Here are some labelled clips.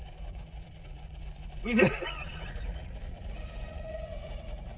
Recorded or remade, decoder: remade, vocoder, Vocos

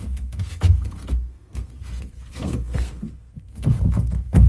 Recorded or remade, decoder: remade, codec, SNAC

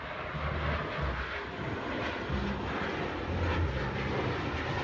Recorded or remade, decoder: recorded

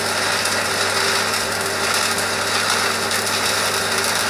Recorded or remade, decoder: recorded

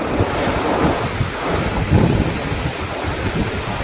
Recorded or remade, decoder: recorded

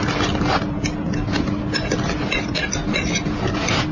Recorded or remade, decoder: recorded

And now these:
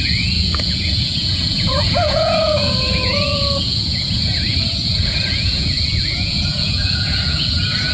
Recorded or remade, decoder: remade, vocoder, Vocos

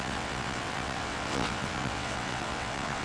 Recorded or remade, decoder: remade, vocoder, WaveNeXt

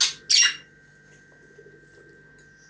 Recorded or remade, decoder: recorded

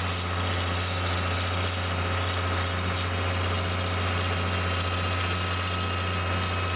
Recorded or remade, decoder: recorded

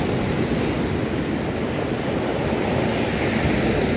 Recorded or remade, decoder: recorded